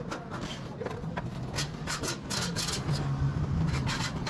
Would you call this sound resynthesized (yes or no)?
no